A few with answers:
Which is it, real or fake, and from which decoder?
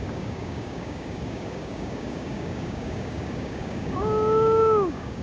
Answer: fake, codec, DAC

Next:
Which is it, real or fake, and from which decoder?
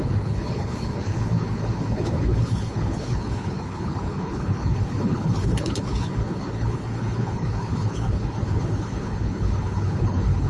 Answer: fake, codec, HILCodec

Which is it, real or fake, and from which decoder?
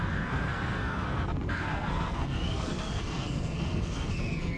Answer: fake, codec, SNAC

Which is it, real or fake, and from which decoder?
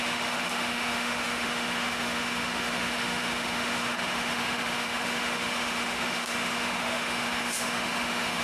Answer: fake, autoencoder, DAC-VAE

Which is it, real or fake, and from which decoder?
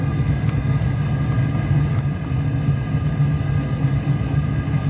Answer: real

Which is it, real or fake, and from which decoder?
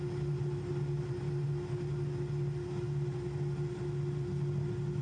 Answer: real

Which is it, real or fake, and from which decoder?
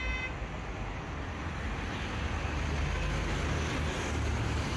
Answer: real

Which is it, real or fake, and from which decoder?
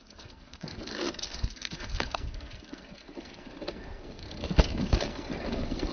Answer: fake, codec, SNAC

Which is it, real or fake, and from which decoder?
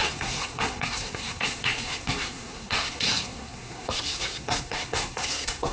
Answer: fake, codec, SNAC